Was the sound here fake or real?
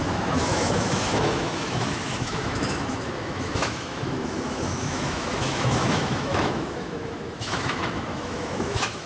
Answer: fake